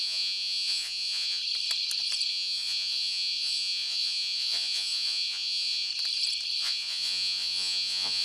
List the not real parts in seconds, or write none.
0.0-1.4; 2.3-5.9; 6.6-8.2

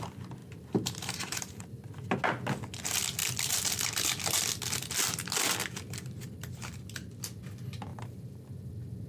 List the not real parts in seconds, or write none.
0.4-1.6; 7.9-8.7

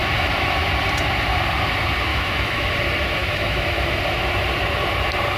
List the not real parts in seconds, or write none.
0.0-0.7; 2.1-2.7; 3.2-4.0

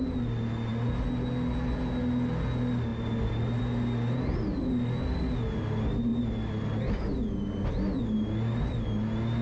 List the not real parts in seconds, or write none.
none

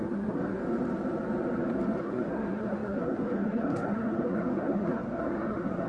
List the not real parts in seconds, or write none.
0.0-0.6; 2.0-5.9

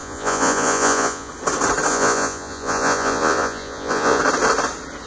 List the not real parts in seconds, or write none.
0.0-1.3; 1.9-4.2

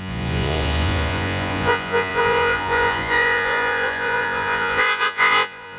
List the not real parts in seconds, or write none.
0.0-5.8